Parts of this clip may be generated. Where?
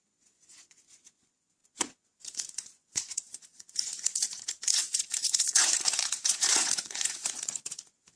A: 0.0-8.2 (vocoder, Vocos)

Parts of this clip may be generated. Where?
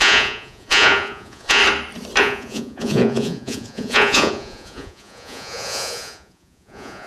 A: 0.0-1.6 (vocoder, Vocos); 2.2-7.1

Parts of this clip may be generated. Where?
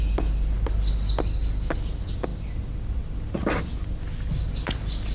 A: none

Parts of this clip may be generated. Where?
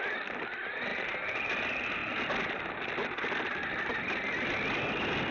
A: none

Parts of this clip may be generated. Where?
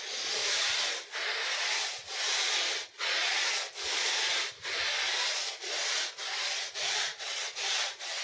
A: 2.8-3.4 (vocoder, Vocos)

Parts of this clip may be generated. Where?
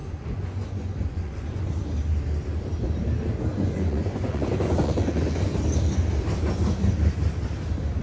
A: 0.0-1.7 (vocoder, Vocos); 3.5-5.6